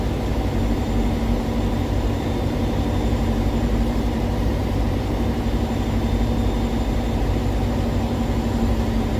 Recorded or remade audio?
remade